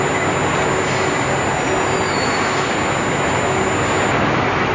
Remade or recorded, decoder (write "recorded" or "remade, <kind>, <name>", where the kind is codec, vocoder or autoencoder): recorded